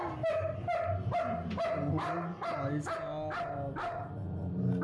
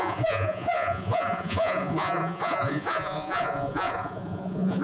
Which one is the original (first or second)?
first